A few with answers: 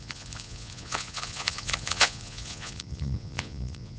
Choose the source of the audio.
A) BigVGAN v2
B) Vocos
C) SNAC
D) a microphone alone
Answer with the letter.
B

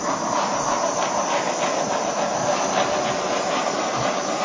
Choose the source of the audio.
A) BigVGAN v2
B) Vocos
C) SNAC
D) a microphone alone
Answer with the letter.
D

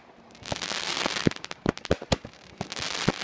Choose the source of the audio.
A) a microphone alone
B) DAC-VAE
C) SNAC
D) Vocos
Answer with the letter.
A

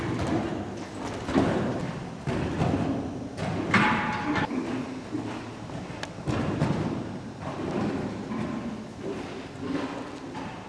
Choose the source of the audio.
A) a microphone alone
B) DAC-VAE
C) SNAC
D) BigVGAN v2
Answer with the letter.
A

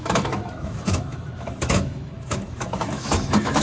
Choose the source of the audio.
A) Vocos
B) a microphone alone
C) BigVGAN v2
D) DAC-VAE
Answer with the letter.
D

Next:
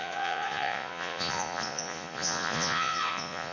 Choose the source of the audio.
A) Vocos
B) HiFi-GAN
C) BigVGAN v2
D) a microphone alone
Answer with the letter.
A